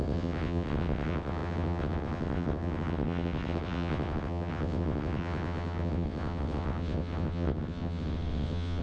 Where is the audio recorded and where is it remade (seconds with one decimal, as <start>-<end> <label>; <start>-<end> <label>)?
0.0-8.8 remade